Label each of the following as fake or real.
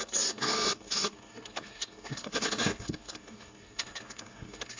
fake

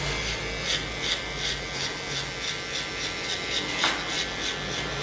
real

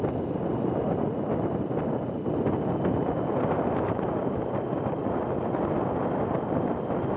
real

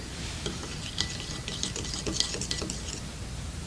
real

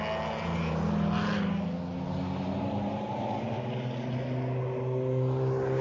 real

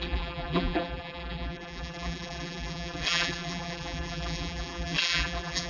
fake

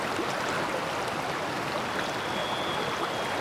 real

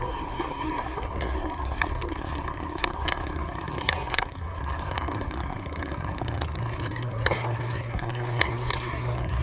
fake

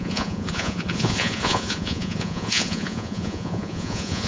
fake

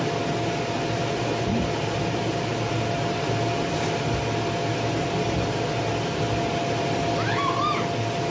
real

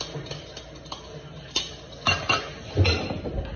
real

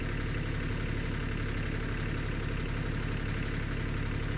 real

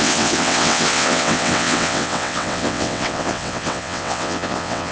fake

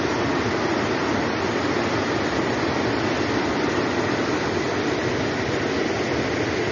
real